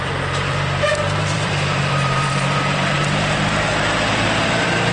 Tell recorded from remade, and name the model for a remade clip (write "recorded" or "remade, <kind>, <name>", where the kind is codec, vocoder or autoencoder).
remade, vocoder, BigVGAN v2